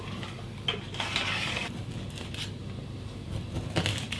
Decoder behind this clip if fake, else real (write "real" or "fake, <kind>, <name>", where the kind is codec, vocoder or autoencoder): real